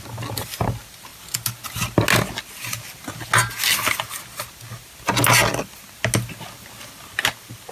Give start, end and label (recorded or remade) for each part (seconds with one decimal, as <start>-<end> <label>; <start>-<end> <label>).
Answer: 0.0-7.7 recorded